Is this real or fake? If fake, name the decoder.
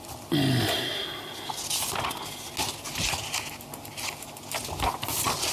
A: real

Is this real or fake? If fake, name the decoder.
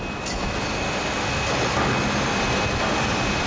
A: real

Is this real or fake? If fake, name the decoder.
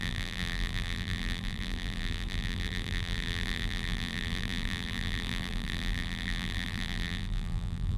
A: fake, vocoder, BigVGAN v2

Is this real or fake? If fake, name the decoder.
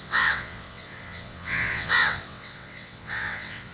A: fake, vocoder, WaveNeXt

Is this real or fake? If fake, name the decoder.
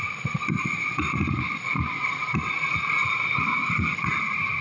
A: real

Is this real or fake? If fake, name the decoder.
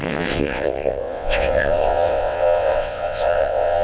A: fake, vocoder, WaveNeXt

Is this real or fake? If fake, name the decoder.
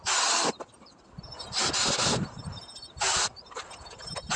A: real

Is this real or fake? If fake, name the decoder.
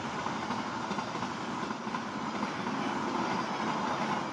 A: real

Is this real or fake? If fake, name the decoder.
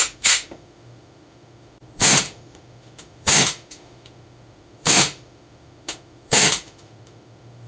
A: fake, autoencoder, DAC-VAE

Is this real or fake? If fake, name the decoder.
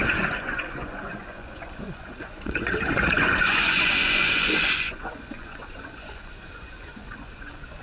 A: fake, vocoder, Vocos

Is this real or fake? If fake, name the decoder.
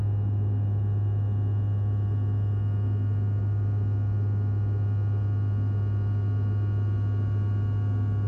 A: real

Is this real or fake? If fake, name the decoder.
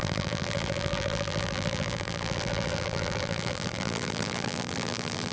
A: fake, vocoder, BigVGAN v2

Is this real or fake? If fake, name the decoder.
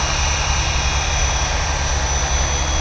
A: real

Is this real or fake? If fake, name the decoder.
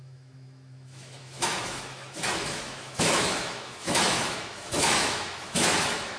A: fake, autoencoder, DAC-VAE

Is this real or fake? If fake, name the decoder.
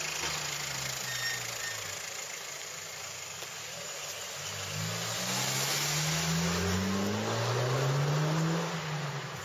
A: real